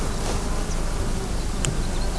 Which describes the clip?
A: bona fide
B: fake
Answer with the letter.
A